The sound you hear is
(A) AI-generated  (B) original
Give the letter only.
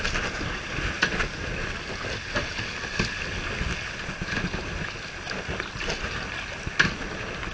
B